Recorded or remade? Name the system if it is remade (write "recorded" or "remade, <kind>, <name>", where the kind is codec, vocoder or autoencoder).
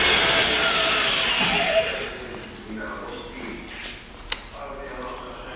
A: recorded